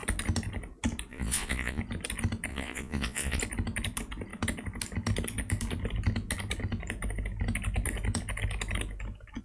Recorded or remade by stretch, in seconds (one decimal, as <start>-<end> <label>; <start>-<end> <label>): 0.0-1.1 recorded; 1.1-1.8 remade; 1.8-2.5 recorded; 2.5-3.4 remade; 3.4-9.4 recorded